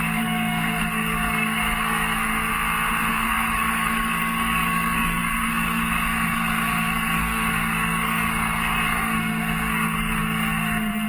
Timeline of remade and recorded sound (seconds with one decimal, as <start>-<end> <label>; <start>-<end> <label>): 0.0-2.5 remade; 2.5-3.1 recorded; 3.1-11.1 remade